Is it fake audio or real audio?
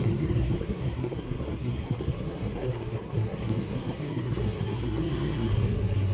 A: fake